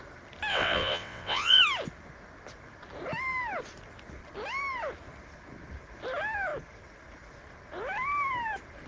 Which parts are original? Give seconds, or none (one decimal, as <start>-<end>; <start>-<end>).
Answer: 0.0-0.5; 1.6-8.9